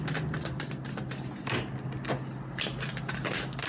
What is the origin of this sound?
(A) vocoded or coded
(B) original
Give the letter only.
B